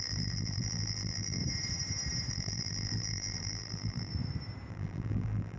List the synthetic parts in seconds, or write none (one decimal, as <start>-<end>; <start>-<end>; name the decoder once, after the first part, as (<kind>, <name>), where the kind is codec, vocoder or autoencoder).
0.0-1.4 (vocoder, BigVGAN v2); 2.3-4.1; 4.7-5.6